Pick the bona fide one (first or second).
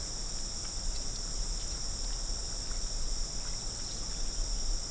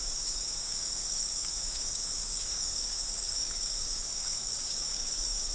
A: first